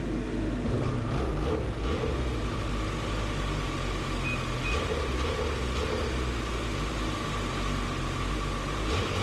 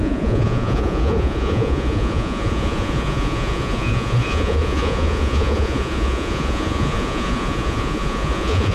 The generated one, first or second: second